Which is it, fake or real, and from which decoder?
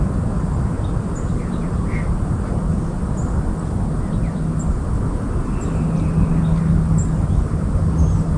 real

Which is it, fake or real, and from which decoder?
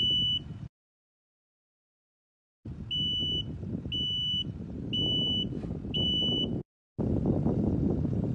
real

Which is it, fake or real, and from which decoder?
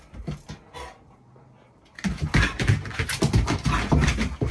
real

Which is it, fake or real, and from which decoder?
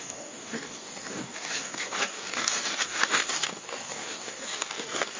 fake, codec, DAC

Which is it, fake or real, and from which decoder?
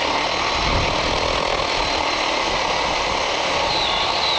real